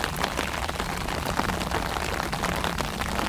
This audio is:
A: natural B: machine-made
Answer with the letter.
A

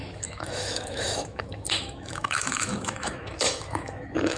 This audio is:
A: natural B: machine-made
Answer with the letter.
B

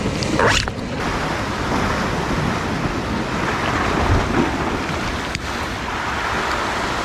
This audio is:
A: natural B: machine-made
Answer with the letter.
A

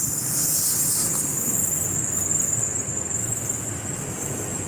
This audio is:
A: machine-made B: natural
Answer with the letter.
B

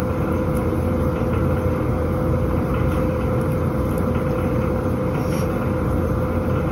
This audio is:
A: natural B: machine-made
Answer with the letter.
A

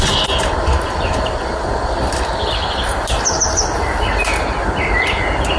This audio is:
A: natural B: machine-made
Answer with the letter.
A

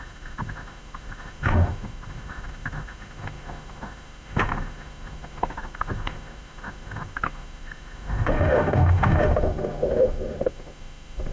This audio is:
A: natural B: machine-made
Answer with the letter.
B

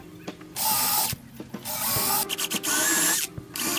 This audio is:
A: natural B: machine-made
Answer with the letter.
A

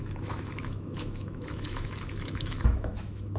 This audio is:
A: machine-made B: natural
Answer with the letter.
A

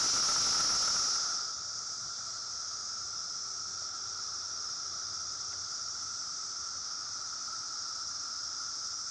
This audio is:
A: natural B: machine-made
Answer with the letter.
A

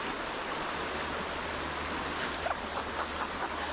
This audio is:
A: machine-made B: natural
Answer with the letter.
B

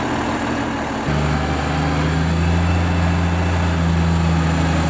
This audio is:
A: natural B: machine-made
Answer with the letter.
A